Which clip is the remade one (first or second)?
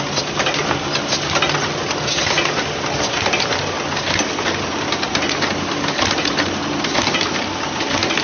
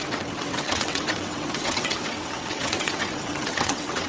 second